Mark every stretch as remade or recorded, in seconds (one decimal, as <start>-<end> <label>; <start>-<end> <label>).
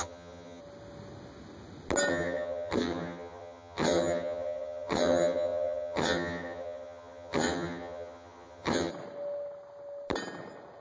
0.0-0.6 remade; 0.6-2.1 recorded; 2.1-8.9 remade; 8.9-10.8 recorded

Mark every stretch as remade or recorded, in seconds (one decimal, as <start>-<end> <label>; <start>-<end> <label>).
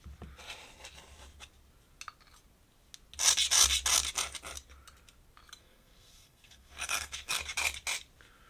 0.0-5.6 recorded; 5.6-7.4 remade; 7.4-8.5 recorded